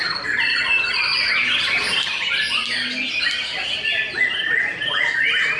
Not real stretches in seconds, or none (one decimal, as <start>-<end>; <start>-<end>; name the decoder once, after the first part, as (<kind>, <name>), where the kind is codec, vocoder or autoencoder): none